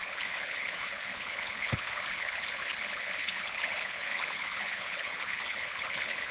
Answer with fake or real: fake